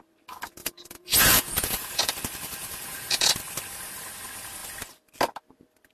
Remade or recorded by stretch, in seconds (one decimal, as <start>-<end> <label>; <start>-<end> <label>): 0.0-0.6 recorded; 0.6-2.1 remade; 2.1-2.6 recorded; 2.6-3.3 remade; 3.3-5.9 recorded